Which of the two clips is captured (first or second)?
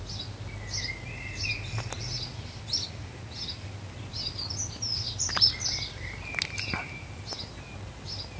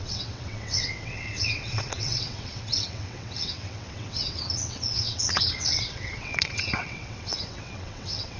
first